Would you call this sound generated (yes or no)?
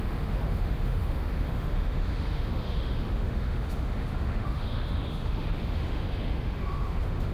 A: yes